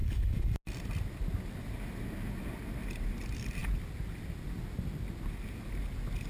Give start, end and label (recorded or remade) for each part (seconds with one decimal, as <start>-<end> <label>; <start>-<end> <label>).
0.0-6.3 recorded